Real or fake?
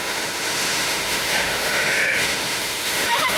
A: fake